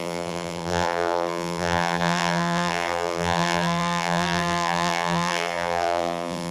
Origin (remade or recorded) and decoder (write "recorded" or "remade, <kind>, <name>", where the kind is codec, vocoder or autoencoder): remade, vocoder, BigVGAN v2